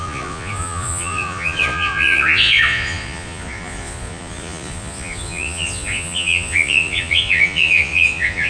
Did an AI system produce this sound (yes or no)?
yes